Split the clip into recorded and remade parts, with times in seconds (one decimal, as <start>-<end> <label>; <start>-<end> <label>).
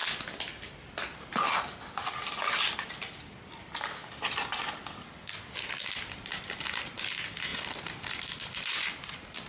0.0-9.5 recorded